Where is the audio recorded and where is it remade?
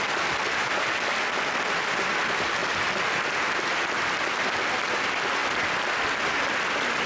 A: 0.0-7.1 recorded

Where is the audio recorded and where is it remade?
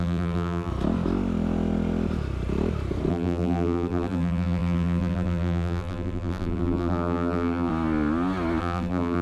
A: 0.0-0.7 remade; 0.7-3.1 recorded; 3.1-7.7 remade; 7.7-8.6 recorded; 8.6-9.2 remade